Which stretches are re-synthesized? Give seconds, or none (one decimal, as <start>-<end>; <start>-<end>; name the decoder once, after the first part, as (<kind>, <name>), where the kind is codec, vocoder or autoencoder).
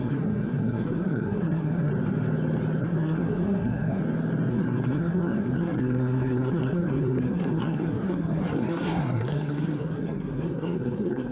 0.0-1.9 (codec, SNAC); 2.8-4.0; 4.5-11.3